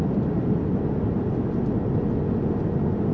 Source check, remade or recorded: recorded